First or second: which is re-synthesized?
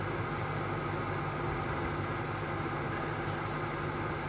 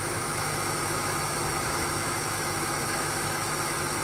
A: second